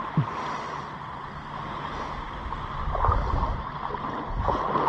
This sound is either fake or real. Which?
real